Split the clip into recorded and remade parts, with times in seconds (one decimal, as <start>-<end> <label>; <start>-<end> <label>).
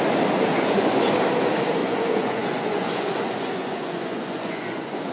0.0-0.5 recorded; 0.5-1.1 remade; 1.1-1.8 recorded; 1.8-5.1 remade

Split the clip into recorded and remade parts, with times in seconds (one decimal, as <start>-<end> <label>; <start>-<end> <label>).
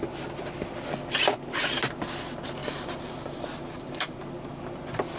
0.0-2.6 recorded; 2.6-4.3 remade; 4.3-5.2 recorded